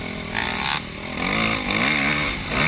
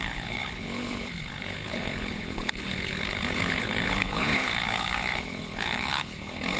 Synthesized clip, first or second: second